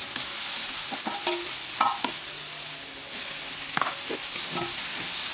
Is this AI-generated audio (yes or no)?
no